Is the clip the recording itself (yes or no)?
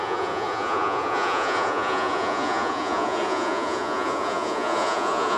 no